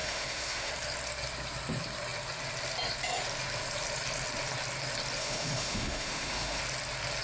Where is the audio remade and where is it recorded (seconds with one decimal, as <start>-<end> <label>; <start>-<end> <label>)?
0.0-0.7 remade; 0.7-5.2 recorded; 5.2-6.6 remade; 6.6-7.2 recorded